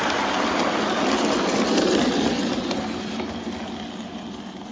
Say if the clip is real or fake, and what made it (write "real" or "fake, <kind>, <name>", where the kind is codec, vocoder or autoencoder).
real